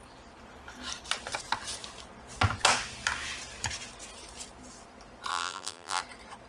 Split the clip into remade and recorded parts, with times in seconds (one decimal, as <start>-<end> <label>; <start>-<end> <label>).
0.0-5.3 recorded; 5.3-6.0 remade; 6.0-6.5 recorded